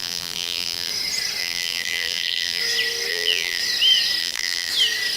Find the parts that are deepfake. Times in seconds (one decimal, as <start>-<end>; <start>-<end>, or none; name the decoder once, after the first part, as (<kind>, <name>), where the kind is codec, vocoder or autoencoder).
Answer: 0.0-0.9 (vocoder, BigVGAN v2); 1.4-2.6; 3.1-3.6; 4.2-4.7